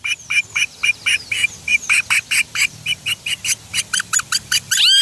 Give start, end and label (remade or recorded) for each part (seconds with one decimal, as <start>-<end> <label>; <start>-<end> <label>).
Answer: 0.0-5.0 recorded